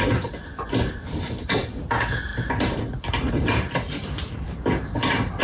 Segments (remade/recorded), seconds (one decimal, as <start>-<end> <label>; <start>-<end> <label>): 0.0-5.4 remade